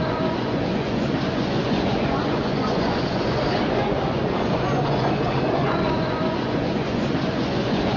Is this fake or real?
fake